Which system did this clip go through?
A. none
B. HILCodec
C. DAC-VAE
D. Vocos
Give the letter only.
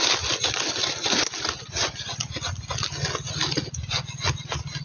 A